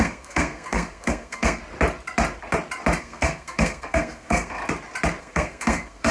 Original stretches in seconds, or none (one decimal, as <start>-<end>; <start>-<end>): 1.6-3.0; 4.6-5.2